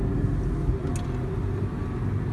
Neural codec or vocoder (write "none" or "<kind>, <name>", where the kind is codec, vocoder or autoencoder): none